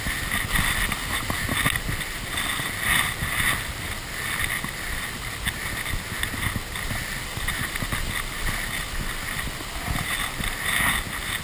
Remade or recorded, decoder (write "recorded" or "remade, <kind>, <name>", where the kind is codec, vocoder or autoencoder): recorded